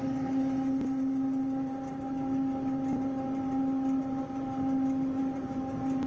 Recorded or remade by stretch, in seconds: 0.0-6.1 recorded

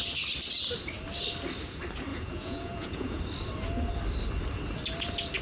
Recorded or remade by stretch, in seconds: 0.0-2.1 recorded; 2.1-3.2 remade; 3.2-5.4 recorded

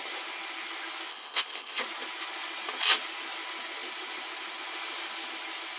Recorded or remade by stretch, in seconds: 0.0-1.1 recorded; 1.1-1.8 remade; 1.8-5.8 recorded